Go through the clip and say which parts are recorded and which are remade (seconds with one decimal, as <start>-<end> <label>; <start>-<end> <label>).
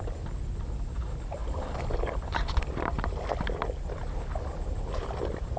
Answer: 0.0-5.6 recorded